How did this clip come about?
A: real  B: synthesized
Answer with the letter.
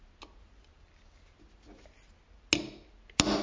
A